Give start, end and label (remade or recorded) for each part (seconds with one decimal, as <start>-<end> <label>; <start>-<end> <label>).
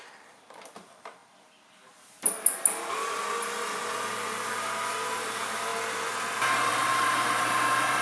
0.0-1.2 remade; 1.2-4.1 recorded; 4.1-5.7 remade; 5.7-6.7 recorded; 6.7-8.0 remade